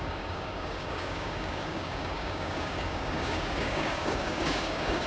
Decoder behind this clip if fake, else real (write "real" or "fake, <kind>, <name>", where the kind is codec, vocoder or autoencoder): fake, codec, DAC